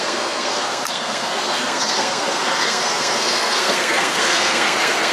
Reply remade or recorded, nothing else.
remade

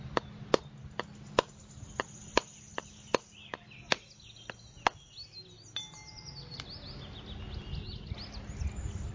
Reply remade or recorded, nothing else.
recorded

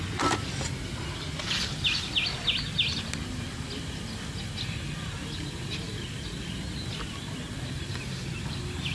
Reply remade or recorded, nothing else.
recorded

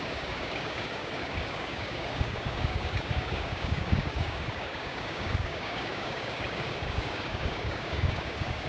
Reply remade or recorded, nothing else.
remade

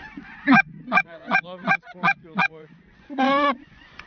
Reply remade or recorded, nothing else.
remade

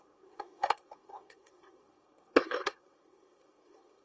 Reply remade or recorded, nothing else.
remade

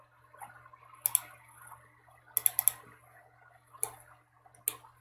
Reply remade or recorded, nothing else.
recorded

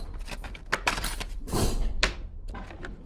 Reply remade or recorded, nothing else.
remade